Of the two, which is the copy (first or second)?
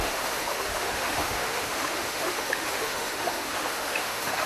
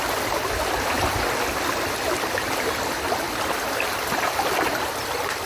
first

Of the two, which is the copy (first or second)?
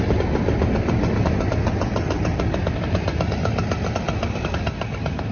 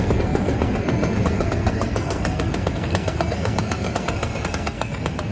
second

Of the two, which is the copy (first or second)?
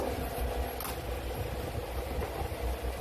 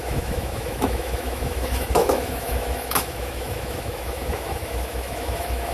second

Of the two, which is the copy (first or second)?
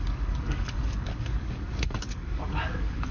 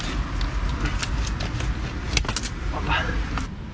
first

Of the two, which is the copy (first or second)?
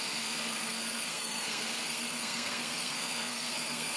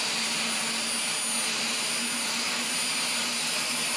first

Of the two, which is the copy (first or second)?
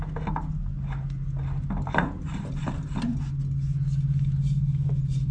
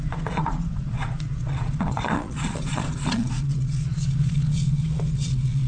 second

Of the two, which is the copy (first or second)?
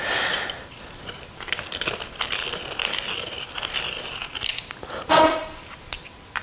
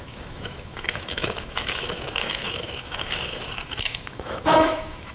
second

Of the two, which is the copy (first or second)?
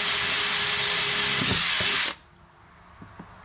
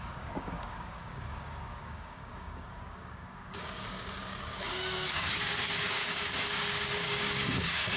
second